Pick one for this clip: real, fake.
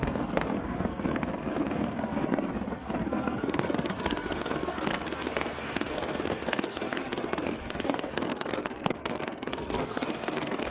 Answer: fake